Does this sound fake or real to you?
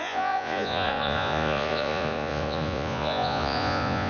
fake